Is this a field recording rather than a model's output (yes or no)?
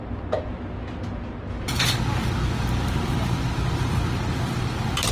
yes